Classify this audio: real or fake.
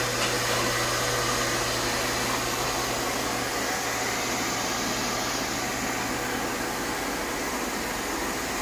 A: real